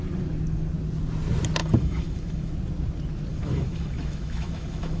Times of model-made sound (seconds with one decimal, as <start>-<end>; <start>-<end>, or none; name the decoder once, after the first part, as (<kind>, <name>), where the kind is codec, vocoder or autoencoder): 1.6-2.5 (autoencoder, DAC-VAE); 3.3-5.0